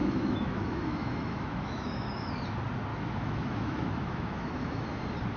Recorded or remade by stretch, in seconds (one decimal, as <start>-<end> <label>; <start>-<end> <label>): 0.0-2.3 remade; 2.3-2.9 recorded; 2.9-5.0 remade; 5.0-5.4 recorded